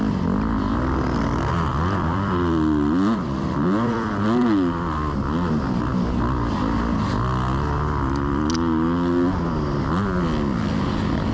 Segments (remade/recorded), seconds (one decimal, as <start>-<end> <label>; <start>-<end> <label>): 0.0-1.7 recorded; 1.7-4.1 remade; 4.1-11.3 recorded